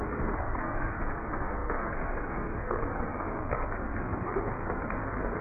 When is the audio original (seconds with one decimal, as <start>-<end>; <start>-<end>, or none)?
none